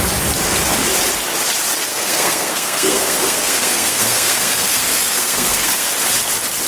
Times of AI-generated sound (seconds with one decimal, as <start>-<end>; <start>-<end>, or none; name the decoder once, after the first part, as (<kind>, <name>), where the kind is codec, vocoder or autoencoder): 1.9-5.9 (codec, SNAC)